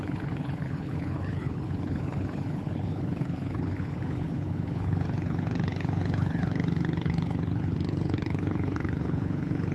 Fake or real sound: fake